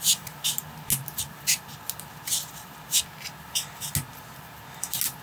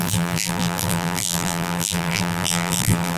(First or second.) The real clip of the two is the first